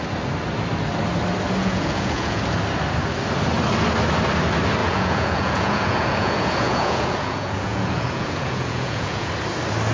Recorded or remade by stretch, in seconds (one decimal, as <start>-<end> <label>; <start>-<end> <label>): 0.0-1.6 recorded; 1.6-2.4 remade; 2.4-4.8 recorded; 4.8-9.3 remade; 9.3-9.9 recorded